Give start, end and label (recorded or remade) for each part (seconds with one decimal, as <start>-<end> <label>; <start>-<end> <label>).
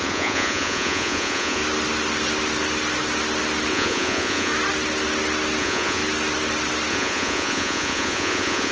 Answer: 0.0-1.6 remade; 1.6-3.7 recorded; 3.7-4.5 remade; 4.5-5.6 recorded; 5.6-6.0 remade; 6.0-6.9 recorded; 6.9-8.7 remade